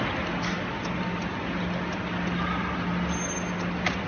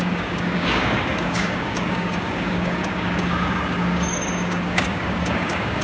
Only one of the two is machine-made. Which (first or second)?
second